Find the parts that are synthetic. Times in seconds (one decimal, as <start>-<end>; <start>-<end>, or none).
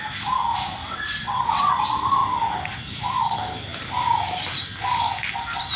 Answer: 0.8-1.7